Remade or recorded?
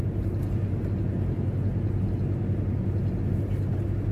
recorded